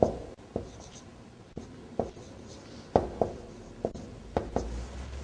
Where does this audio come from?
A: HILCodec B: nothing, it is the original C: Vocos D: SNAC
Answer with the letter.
B